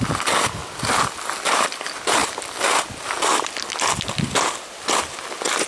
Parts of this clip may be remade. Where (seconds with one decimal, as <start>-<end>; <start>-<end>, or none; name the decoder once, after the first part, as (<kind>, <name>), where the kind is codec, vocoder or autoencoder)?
none